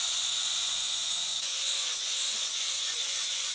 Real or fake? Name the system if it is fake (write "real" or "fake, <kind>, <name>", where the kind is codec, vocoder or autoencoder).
fake, vocoder, Vocos